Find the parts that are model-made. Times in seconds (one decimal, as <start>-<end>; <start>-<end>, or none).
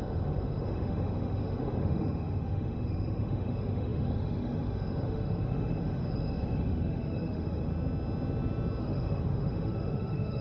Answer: 0.0-7.7; 8.8-10.4